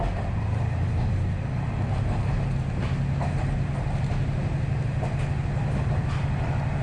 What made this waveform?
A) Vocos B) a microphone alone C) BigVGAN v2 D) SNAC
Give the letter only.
B